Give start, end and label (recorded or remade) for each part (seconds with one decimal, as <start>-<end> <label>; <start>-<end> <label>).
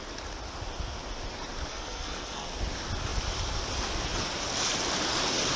0.0-1.7 recorded; 1.7-2.5 remade; 2.5-5.6 recorded